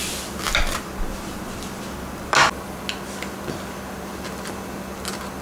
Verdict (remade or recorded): recorded